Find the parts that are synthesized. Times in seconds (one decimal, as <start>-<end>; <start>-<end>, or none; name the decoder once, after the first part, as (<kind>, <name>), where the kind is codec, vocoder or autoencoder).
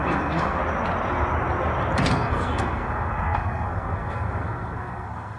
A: 0.0-0.6 (codec, SNAC); 2.1-5.4